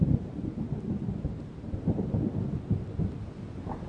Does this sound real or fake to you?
real